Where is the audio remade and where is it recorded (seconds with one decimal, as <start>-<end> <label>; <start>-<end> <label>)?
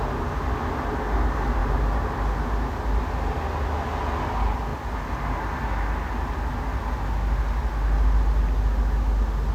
0.0-9.5 recorded